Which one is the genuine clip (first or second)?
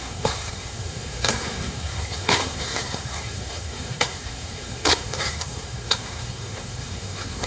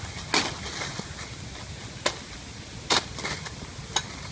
second